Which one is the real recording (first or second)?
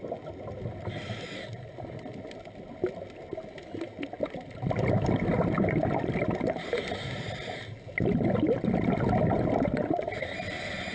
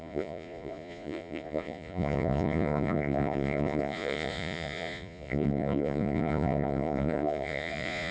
first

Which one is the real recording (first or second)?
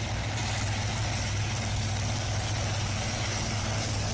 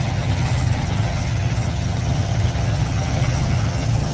first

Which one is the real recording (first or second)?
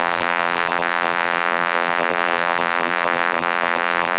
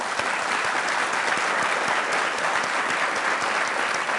second